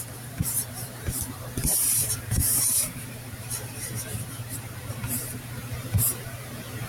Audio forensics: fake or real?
fake